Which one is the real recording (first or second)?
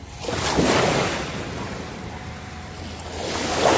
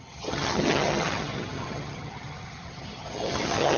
first